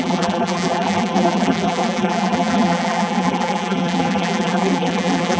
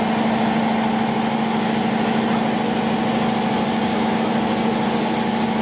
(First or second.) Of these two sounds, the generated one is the first